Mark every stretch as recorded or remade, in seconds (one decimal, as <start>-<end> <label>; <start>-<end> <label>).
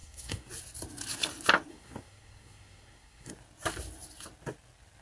0.0-0.5 remade; 0.5-1.7 recorded; 1.7-3.3 remade; 3.3-5.0 recorded